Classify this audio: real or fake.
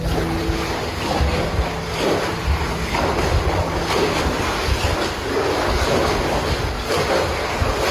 real